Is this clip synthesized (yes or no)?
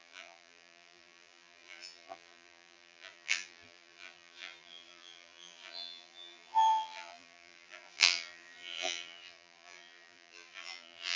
yes